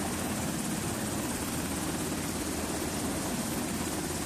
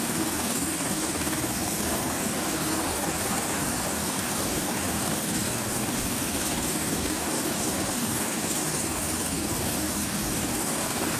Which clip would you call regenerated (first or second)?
second